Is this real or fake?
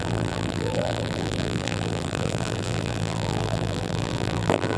fake